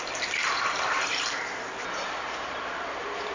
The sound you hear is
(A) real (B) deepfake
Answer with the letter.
B